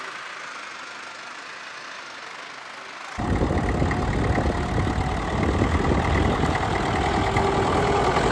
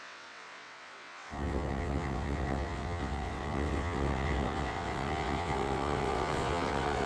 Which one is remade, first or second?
second